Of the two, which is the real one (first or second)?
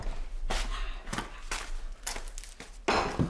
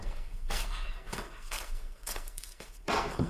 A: first